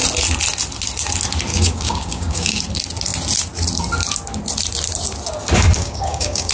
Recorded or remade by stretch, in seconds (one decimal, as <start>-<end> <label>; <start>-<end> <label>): 0.0-1.5 recorded; 1.5-2.6 remade; 2.6-5.8 recorded; 5.8-6.5 remade